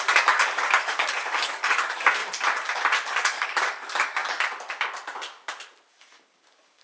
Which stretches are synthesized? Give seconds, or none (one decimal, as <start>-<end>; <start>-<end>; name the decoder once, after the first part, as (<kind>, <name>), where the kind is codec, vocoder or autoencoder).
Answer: 0.0-2.2 (codec, DAC); 3.1-4.2; 5.9-6.8